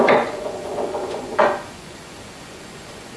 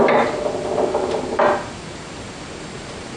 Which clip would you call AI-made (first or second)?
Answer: first